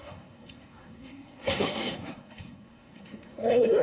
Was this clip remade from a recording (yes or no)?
yes